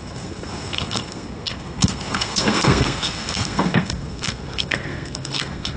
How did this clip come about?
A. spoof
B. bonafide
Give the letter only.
A